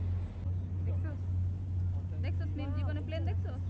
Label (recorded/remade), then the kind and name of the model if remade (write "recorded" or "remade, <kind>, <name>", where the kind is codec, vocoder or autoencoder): recorded